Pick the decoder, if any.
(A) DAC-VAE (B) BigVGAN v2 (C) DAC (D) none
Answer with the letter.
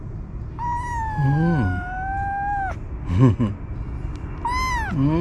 D